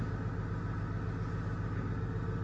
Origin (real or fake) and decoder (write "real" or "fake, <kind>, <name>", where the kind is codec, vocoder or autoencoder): real